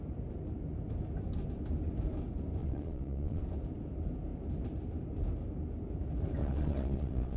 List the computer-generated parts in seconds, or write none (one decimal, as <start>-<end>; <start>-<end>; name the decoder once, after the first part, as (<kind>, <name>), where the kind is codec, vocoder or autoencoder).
2.6-3.4 (vocoder, Vocos); 6.4-7.4